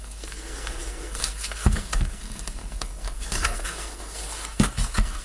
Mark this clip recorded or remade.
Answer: remade